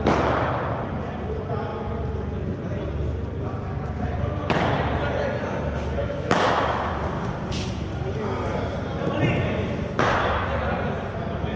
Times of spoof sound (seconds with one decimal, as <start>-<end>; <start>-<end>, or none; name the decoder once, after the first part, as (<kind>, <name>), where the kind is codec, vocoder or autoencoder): 6.0-6.9 (autoencoder, DAC-VAE)